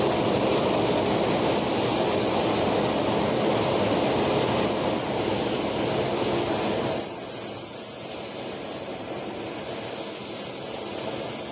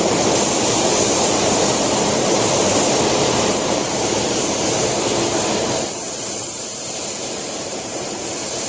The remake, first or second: second